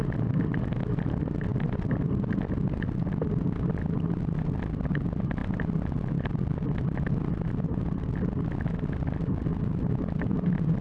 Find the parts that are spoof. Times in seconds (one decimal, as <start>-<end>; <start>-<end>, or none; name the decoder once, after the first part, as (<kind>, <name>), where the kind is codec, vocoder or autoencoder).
none

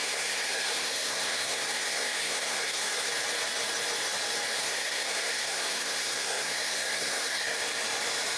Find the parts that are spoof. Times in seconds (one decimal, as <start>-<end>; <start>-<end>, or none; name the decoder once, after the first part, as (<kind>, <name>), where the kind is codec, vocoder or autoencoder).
0.0-3.1 (codec, SNAC); 4.6-7.6

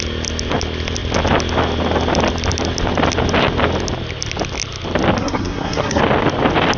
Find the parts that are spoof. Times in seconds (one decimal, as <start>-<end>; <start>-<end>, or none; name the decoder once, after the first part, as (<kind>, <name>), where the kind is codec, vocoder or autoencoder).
5.2-6.0 (codec, SNAC)

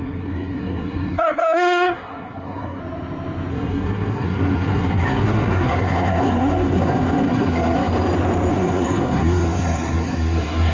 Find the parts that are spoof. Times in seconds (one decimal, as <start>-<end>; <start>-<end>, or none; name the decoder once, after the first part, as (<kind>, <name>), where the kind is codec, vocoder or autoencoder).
0.0-2.8 (codec, SNAC); 3.5-7.9; 8.5-10.7

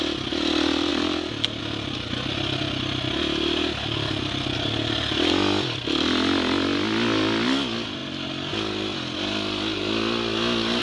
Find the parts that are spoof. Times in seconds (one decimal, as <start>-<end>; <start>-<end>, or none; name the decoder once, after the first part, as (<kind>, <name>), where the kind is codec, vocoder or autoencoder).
none

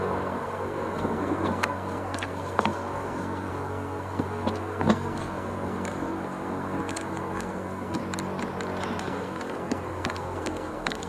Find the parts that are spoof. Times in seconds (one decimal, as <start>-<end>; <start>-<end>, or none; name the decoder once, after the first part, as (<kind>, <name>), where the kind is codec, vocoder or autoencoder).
0.0-8.0 (codec, SNAC); 9.0-11.1

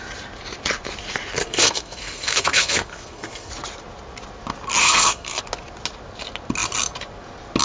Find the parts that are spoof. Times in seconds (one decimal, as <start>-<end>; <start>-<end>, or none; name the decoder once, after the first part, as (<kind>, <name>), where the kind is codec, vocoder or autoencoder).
1.4-3.5 (codec, SNAC); 4.8-5.4

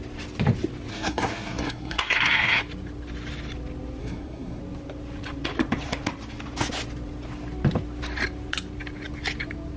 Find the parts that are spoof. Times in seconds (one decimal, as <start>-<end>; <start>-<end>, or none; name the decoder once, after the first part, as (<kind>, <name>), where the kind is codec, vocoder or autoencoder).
0.9-2.6 (codec, SNAC); 4.0-4.6